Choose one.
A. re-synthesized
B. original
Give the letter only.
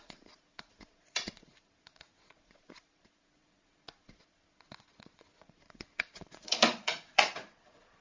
A